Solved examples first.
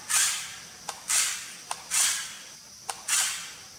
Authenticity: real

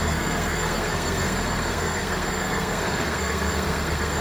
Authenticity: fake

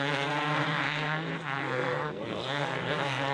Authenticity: fake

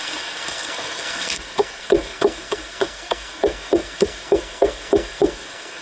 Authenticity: fake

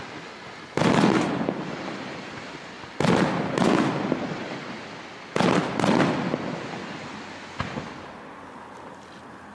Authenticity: real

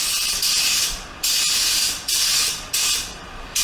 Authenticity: real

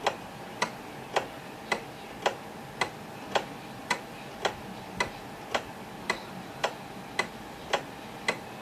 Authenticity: real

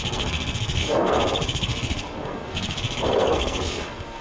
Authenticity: fake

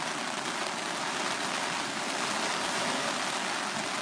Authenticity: real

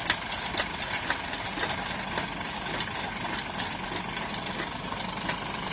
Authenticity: real